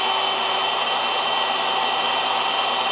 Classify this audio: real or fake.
real